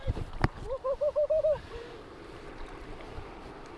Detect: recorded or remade remade